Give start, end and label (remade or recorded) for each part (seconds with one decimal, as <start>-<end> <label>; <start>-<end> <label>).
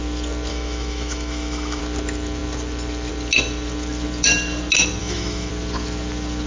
0.0-0.5 recorded; 0.5-1.8 remade; 1.8-5.0 recorded; 5.0-5.5 remade; 5.5-6.5 recorded